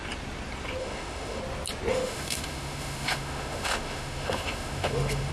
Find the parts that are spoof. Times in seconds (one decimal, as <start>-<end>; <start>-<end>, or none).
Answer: 0.8-1.4; 1.9-5.3

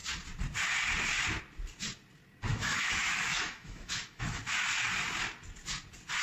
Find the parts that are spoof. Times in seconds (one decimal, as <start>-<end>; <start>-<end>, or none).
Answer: 2.5-4.4

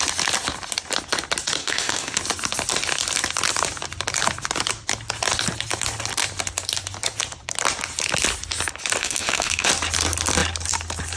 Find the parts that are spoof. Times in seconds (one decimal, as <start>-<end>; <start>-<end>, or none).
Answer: 1.6-2.2; 9.0-9.7

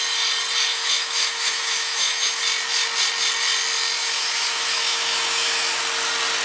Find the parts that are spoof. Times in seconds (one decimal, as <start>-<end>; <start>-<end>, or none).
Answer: 0.7-2.4; 4.0-5.8

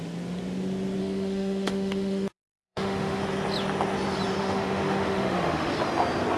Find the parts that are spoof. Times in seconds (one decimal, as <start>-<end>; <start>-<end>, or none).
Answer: 1.0-3.2; 4.4-5.7

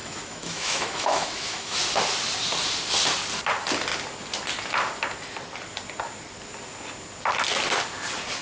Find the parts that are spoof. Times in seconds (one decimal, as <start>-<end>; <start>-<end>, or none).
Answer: 0.0-1.8

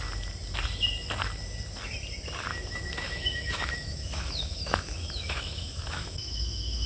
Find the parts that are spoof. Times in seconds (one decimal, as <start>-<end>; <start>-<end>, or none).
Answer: 2.5-6.9

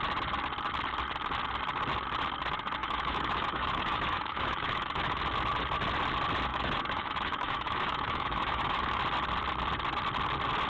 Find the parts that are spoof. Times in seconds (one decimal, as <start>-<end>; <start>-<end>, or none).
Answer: 2.8-5.2; 6.5-9.0